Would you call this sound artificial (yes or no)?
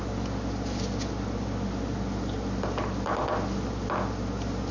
no